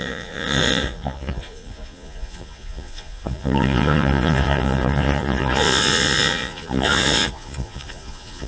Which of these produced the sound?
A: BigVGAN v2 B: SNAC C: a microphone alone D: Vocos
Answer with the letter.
D